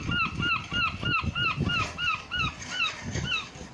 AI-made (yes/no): no